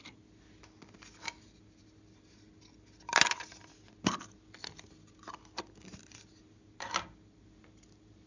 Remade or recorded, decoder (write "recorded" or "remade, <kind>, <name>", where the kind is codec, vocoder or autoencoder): recorded